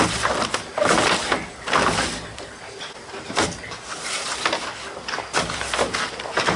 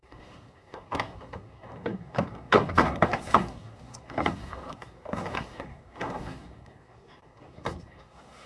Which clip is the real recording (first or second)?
first